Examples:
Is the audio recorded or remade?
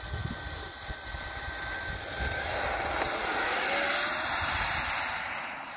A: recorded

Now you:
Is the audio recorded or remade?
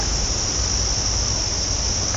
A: recorded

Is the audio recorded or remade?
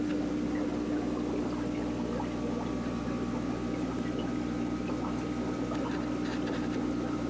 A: recorded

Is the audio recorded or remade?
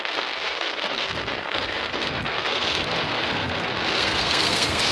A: remade